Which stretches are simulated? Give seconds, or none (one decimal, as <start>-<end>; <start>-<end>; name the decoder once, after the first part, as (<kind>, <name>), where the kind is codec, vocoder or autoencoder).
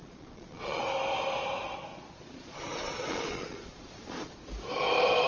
0.0-0.8 (vocoder, Vocos); 1.9-4.4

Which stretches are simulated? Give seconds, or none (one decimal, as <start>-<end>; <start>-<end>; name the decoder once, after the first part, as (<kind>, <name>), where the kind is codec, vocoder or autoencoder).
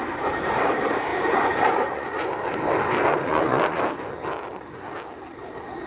1.1-2.3 (vocoder, Vocos); 3.1-3.8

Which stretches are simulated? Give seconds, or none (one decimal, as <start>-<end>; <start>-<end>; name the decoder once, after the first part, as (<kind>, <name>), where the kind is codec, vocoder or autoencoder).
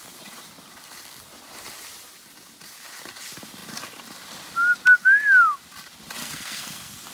6.2-7.1 (codec, SNAC)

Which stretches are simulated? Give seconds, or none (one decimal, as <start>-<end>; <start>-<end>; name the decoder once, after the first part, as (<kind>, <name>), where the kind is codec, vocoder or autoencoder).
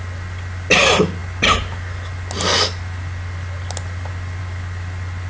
none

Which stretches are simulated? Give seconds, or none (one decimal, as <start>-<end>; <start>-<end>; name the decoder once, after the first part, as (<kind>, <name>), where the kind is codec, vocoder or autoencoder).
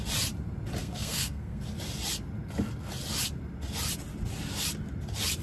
0.8-1.6 (codec, SNAC)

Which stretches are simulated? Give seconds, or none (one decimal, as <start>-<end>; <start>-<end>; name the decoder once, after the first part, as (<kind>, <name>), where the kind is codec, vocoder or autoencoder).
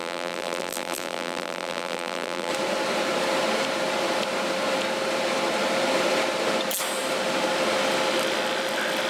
0.0-2.5 (vocoder, BigVGAN v2)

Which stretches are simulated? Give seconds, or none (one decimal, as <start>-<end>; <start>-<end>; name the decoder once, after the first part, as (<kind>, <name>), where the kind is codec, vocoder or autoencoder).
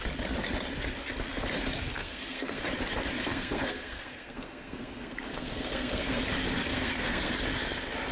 2.0-2.6 (codec, SNAC); 3.2-6.2; 6.7-7.3